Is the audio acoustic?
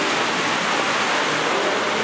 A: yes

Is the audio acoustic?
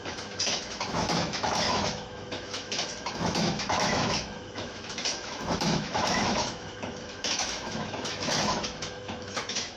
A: no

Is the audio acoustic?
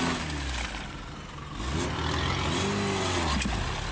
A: yes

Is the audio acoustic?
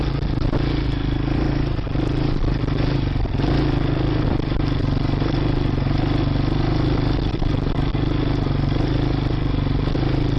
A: yes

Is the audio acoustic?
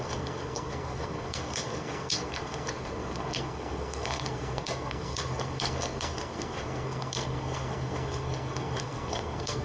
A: no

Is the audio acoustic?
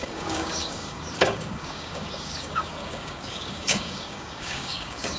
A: no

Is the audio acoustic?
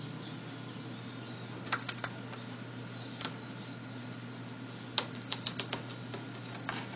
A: yes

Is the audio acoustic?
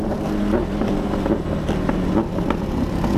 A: yes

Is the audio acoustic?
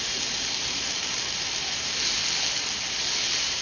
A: no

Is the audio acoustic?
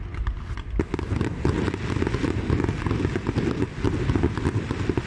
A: yes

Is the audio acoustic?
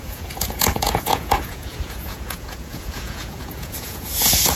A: no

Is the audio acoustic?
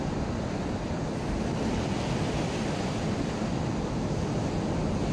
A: yes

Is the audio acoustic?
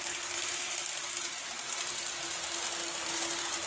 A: yes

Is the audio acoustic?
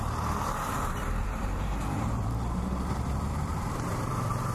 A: no